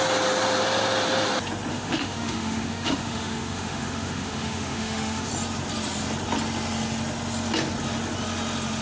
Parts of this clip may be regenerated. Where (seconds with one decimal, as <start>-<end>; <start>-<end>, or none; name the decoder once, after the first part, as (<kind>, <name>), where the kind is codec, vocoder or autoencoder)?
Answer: 1.7-5.3 (autoencoder, DAC-VAE)